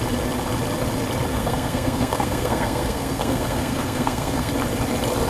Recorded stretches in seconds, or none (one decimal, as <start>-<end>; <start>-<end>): 0.0-1.3; 4.5-5.3